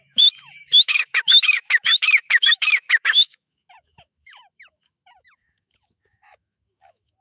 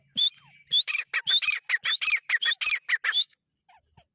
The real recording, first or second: second